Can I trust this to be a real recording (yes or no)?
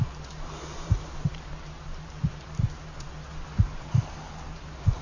no